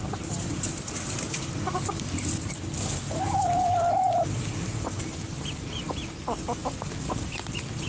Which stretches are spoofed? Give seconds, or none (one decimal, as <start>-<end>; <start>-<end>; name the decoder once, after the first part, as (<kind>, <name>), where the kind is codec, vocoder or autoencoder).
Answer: none